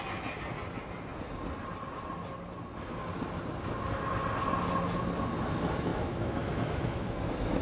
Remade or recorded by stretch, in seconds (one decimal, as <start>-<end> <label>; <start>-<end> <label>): 0.0-5.9 recorded; 5.9-7.6 remade